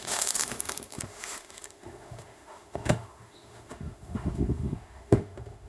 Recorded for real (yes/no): no